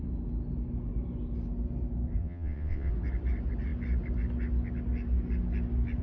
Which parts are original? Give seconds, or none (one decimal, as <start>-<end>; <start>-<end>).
0.0-2.2; 2.9-6.0